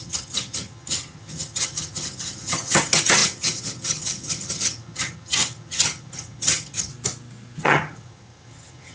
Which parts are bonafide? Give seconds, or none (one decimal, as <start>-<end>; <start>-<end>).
6.9-7.6

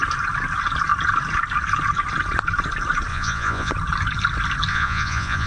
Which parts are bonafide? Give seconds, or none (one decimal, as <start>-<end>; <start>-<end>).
0.0-3.1; 3.7-4.7